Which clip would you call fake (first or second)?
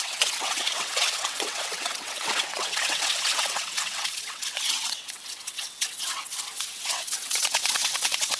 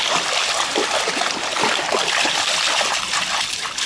first